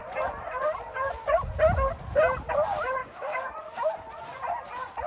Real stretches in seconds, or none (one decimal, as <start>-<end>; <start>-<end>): 0.0-3.0; 3.5-5.1